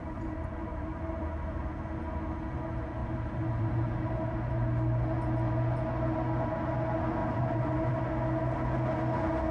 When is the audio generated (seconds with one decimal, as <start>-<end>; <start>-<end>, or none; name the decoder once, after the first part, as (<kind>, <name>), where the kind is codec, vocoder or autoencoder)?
0.0-1.2 (vocoder, BigVGAN v2); 3.0-4.5; 7.2-8.0